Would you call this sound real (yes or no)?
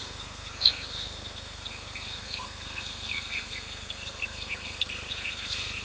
no